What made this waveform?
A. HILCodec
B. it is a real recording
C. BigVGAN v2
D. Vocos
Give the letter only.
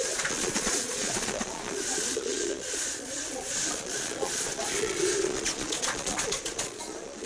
D